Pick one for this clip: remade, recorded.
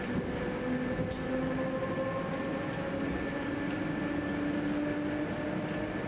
recorded